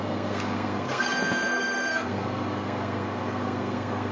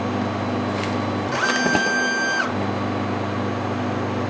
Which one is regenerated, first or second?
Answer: first